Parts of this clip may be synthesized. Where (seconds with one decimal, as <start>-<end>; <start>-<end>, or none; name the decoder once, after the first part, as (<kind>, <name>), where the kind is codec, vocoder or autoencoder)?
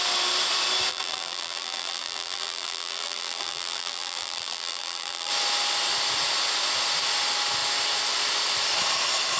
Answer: 0.9-5.3 (vocoder, BigVGAN v2)